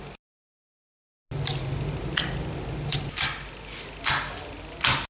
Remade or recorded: recorded